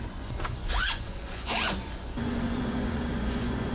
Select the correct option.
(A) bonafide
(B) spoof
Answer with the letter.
B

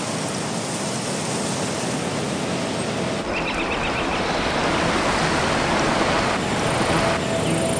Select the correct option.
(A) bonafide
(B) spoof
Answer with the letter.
A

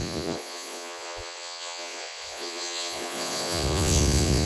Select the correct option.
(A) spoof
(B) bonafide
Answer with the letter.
A